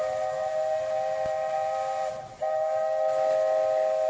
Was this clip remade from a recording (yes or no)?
no